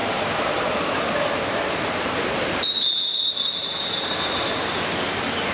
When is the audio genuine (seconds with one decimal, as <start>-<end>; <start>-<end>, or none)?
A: none